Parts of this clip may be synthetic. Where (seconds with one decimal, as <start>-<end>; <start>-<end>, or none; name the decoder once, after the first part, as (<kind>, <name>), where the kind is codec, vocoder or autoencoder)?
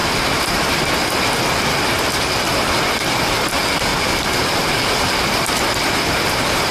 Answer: 0.0-0.9 (vocoder, BigVGAN v2); 3.9-6.7